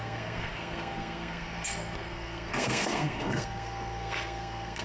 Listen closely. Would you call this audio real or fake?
fake